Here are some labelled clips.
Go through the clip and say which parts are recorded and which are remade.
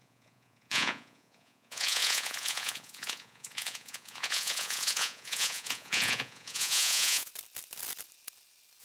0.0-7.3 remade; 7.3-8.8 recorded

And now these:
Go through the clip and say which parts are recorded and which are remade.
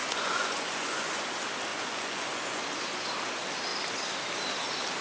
0.0-1.2 remade; 1.2-1.7 recorded; 1.7-2.6 remade; 2.6-5.0 recorded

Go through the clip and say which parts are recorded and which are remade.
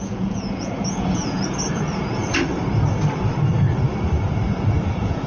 0.0-2.2 remade; 2.2-4.7 recorded; 4.7-5.3 remade